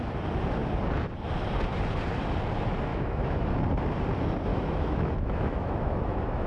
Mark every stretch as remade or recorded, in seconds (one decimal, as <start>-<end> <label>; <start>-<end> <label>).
0.0-2.9 recorded; 2.9-3.6 remade; 3.6-4.5 recorded; 4.5-6.5 remade